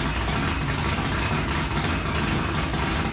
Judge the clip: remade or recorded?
recorded